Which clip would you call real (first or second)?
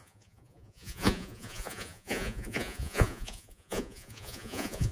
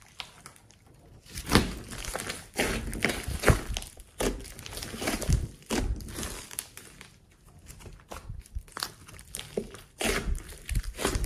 second